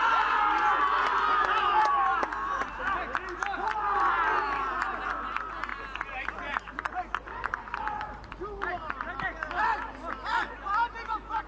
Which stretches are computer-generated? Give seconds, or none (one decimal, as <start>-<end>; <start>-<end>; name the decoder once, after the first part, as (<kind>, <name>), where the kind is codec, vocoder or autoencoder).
2.4-3.7 (vocoder, BigVGAN v2); 5.7-7.8